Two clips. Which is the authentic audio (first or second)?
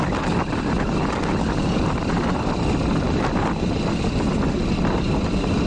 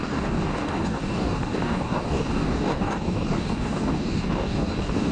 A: first